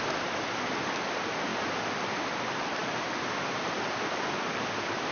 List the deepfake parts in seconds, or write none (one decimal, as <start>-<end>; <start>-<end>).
none

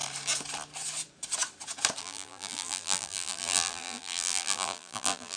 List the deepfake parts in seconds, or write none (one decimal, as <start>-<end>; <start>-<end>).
2.0-5.4